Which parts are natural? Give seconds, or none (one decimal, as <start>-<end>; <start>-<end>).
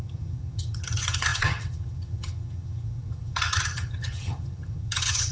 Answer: none